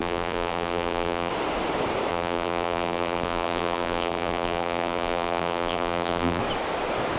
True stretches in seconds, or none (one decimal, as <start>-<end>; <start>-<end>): 1.3-2.1; 6.4-7.2